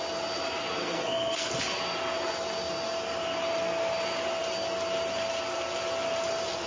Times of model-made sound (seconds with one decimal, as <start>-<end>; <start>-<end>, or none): 0.8-1.5

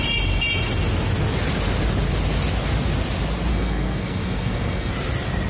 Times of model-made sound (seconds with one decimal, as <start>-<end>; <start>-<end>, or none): 3.5-4.9

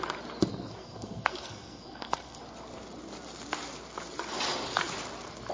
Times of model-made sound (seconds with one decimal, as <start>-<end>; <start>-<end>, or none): 0.5-2.4

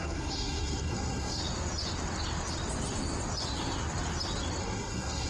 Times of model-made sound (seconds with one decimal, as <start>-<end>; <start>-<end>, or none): 0.0-1.4; 4.6-5.3

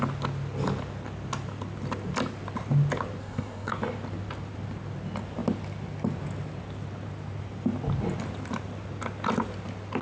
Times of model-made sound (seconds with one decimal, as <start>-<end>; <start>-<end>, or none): 3.2-3.7